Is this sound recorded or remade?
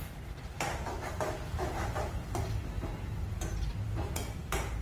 recorded